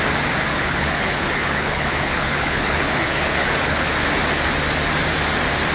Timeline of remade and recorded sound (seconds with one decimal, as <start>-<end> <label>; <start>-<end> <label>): 0.0-0.5 recorded; 0.5-3.9 remade; 3.9-5.7 recorded